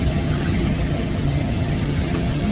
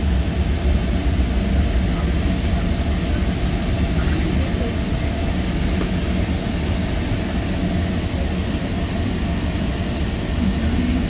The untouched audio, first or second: second